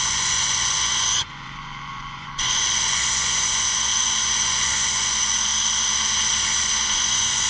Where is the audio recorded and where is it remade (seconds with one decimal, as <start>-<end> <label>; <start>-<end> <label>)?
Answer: 0.0-5.5 remade; 5.5-6.6 recorded; 6.6-7.5 remade